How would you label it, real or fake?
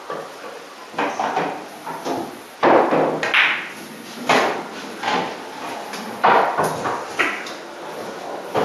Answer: real